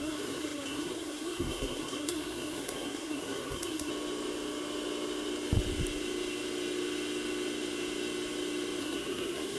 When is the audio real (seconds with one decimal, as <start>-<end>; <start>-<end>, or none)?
3.9-8.8